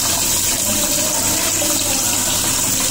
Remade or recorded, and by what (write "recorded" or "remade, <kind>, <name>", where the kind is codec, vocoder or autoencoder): recorded